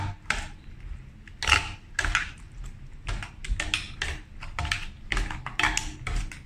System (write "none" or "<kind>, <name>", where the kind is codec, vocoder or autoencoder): none